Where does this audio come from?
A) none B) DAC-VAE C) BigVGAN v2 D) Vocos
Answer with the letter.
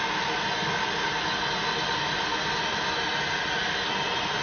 A